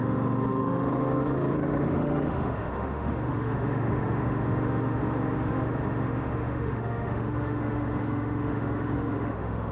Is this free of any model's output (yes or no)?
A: no